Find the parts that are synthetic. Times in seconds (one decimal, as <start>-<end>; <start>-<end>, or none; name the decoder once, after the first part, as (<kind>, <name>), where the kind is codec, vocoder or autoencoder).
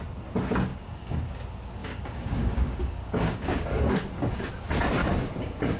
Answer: 0.7-1.3 (codec, DAC); 1.8-4.5; 5.0-5.8